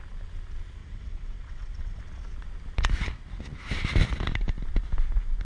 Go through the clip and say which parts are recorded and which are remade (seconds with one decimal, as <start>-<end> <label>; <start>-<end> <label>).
0.0-0.8 recorded; 0.8-2.0 remade; 2.0-5.4 recorded